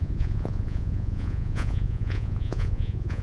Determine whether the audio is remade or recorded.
remade